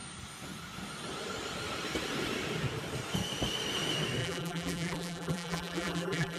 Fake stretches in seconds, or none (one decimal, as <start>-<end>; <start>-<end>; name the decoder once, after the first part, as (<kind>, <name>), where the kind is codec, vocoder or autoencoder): 4.2-6.4 (vocoder, BigVGAN v2)